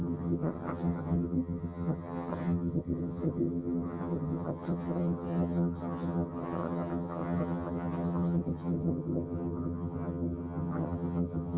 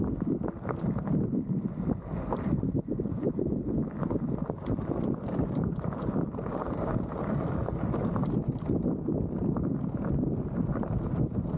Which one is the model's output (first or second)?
first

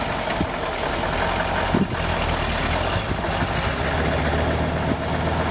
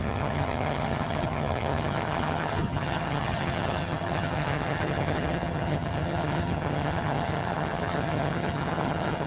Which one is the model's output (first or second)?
second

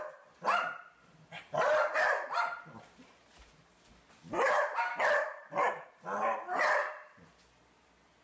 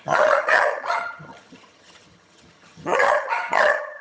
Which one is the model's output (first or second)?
second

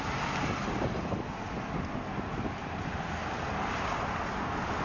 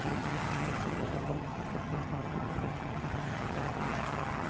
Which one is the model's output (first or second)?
second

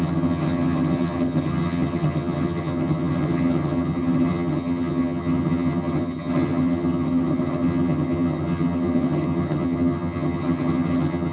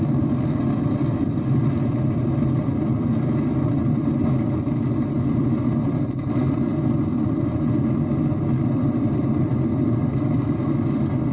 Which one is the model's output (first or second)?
first